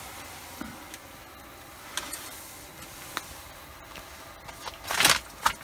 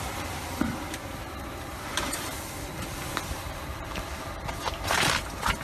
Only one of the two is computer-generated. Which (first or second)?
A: second